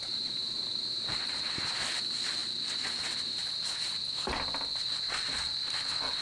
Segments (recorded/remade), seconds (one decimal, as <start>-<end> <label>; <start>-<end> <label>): 0.0-2.0 remade; 2.0-6.2 recorded